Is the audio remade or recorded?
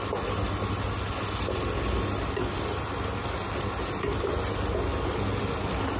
recorded